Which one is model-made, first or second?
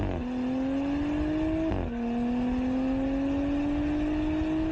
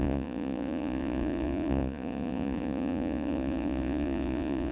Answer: second